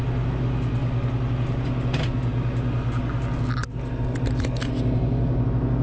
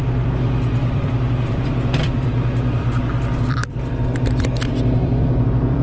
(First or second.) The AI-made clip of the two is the second